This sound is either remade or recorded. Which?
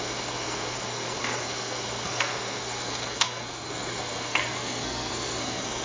remade